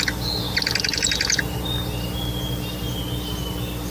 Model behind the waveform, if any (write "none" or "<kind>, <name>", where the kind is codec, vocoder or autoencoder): none